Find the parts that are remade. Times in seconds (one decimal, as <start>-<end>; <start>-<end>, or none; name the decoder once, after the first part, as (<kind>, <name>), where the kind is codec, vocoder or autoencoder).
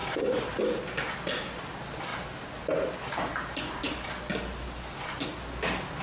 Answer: none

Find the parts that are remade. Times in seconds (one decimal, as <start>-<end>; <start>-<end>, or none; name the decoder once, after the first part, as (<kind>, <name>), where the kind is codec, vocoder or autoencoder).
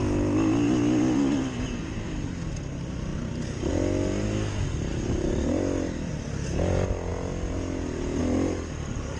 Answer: 3.1-3.7 (vocoder, BigVGAN v2); 4.9-6.1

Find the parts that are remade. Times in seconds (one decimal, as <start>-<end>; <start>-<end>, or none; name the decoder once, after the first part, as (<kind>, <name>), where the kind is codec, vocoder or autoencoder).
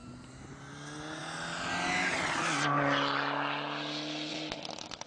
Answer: none